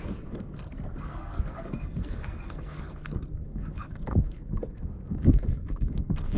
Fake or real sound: fake